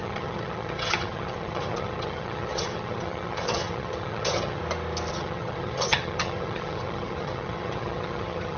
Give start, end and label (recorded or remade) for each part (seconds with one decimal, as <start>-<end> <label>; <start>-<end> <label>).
0.0-4.6 remade; 4.6-5.1 recorded; 5.1-8.6 remade